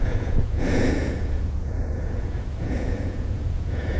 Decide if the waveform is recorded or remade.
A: remade